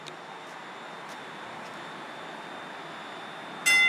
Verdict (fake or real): real